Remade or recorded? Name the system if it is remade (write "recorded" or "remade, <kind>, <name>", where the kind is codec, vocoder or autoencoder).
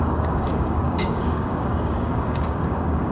remade, codec, DAC